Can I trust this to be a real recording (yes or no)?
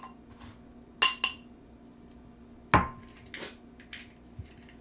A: yes